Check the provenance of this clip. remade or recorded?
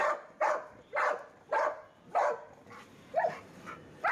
remade